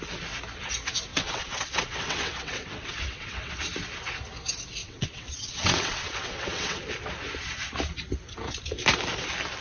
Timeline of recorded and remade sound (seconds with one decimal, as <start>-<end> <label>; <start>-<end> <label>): 0.0-1.1 recorded; 1.1-3.5 remade; 3.5-4.8 recorded; 4.8-6.8 remade; 6.8-9.6 recorded